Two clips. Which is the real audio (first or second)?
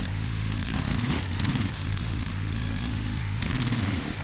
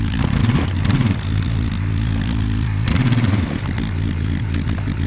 second